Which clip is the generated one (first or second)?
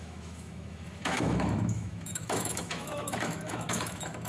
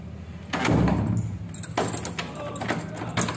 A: first